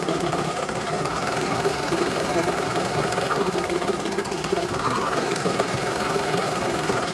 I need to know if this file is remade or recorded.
remade